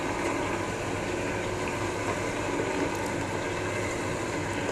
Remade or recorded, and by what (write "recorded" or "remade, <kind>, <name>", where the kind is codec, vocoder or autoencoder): recorded